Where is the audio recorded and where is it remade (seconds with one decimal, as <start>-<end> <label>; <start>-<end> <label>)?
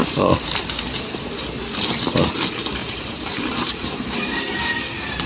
0.0-1.3 remade; 1.3-2.8 recorded; 2.8-4.3 remade; 4.3-5.2 recorded